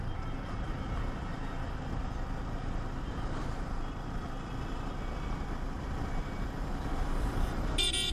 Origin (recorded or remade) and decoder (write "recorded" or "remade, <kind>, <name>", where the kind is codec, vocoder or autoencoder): recorded